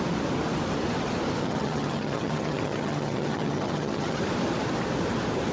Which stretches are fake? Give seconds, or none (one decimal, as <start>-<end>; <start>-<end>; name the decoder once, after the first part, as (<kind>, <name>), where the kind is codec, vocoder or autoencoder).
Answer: 1.4-4.2 (vocoder, HiFi-GAN)